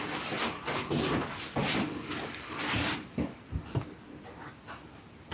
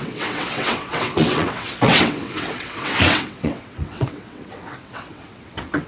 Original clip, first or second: first